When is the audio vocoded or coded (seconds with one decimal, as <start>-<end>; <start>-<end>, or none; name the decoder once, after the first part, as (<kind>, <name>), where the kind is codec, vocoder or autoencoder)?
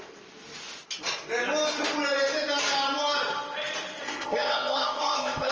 4.0-5.5 (codec, ZipCodec)